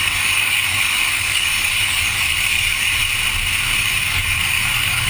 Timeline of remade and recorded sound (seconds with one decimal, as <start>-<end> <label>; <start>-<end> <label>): 0.0-3.0 remade; 3.0-3.8 recorded; 3.8-5.1 remade